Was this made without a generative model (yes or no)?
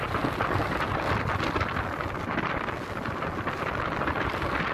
yes